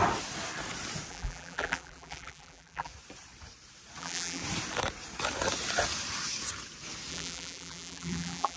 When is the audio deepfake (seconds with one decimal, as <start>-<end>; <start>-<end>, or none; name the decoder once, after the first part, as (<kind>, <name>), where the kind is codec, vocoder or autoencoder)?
1.1-2.9 (vocoder, BigVGAN v2); 4.0-4.4; 7.1-8.6